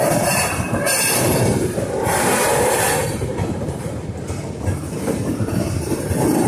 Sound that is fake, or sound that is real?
fake